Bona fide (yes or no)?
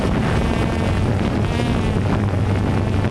yes